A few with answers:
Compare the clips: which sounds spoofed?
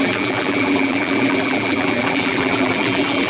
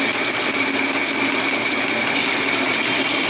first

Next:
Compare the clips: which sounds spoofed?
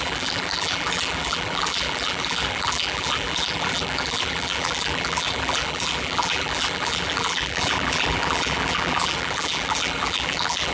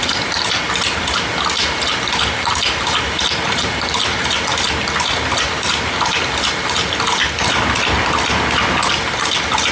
first